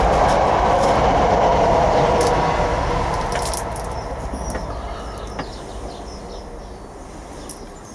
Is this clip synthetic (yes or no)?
no